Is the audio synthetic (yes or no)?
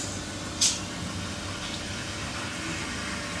no